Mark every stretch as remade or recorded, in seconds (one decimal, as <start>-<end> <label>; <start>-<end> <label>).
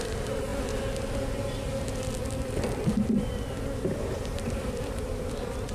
0.0-0.5 remade; 0.5-3.1 recorded; 3.1-5.7 remade